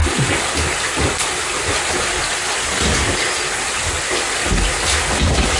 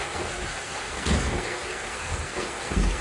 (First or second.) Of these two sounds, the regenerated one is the second